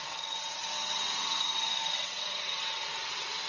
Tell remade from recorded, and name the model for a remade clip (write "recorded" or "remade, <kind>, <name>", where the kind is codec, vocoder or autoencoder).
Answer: remade, vocoder, WaveNeXt